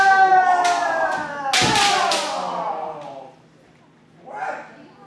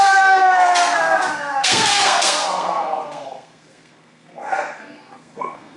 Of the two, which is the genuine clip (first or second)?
first